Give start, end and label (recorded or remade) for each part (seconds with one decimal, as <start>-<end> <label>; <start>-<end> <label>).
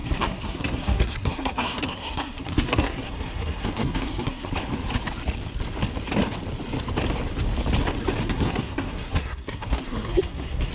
0.0-4.5 remade; 4.5-8.2 recorded; 8.2-10.7 remade